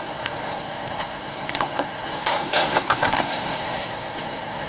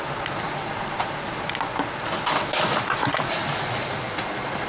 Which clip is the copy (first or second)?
first